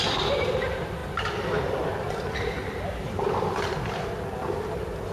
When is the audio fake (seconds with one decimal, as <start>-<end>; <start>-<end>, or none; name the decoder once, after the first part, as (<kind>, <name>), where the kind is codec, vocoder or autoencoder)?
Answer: none